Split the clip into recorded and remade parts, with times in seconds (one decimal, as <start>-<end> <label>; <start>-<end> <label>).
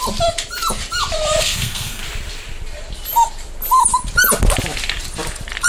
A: 0.0-1.4 recorded; 1.4-2.0 remade; 2.0-5.7 recorded